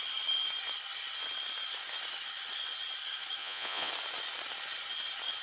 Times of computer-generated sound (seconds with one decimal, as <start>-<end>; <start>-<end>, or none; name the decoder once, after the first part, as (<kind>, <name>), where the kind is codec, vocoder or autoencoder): 3.4-3.9 (vocoder, Vocos)